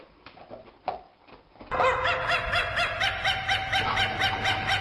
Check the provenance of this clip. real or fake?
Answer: real